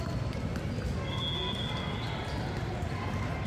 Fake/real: real